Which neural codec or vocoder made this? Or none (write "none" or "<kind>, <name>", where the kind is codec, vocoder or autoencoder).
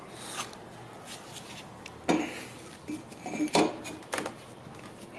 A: none